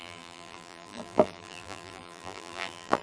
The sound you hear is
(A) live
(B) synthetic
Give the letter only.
B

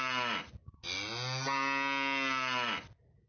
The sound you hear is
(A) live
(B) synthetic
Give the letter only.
A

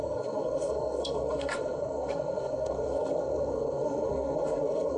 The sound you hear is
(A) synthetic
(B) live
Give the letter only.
A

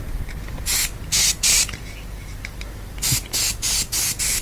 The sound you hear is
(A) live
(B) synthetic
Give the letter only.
A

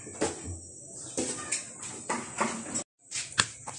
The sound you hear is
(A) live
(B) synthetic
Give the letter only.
A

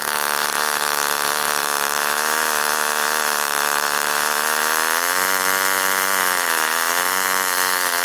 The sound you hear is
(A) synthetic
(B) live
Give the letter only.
A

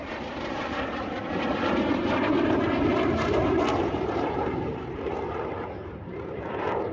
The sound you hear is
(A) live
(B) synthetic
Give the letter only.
B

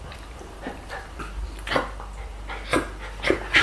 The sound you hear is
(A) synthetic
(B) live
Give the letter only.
A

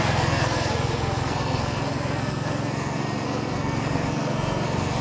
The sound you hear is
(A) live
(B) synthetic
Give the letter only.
B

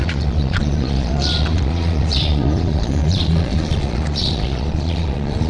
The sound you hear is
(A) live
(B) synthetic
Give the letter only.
B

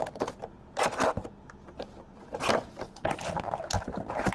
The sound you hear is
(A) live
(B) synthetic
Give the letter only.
A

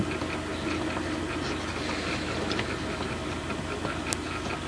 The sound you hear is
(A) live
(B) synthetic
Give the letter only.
A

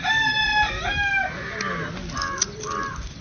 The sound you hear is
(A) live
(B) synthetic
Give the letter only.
A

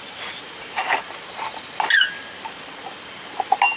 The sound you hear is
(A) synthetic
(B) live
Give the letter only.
B